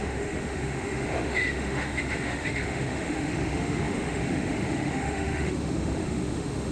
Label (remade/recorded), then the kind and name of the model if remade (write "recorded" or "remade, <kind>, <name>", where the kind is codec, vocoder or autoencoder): remade, autoencoder, DAC-VAE